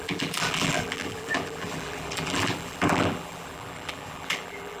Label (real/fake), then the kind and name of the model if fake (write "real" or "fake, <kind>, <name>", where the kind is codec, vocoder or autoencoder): fake, vocoder, BigVGAN v2